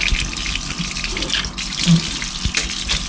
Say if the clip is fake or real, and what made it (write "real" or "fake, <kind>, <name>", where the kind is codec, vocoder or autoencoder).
real